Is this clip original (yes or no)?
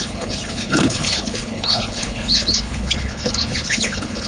no